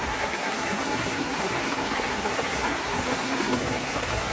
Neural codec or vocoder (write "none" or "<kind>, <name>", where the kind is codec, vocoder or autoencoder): codec, SNAC